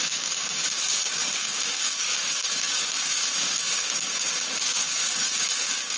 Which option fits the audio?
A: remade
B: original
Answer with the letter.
A